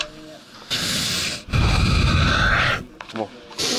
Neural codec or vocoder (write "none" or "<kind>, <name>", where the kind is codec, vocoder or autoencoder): none